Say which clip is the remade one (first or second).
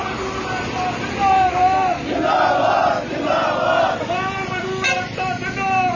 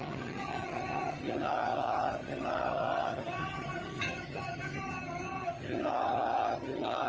second